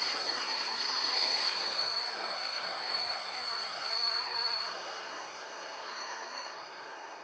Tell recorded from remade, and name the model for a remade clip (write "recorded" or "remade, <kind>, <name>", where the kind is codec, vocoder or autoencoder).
remade, codec, SNAC